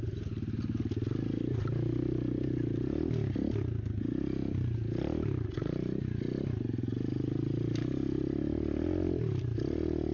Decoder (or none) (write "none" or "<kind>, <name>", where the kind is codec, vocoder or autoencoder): none